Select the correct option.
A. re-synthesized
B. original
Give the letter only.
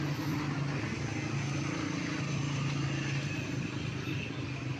B